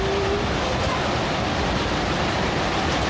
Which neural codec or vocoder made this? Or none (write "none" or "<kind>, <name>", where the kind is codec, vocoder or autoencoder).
none